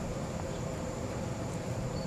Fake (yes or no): yes